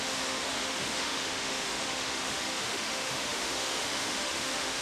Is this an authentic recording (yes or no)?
no